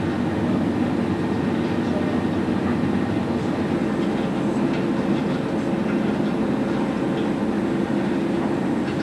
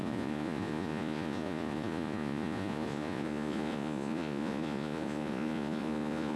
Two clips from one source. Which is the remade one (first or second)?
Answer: second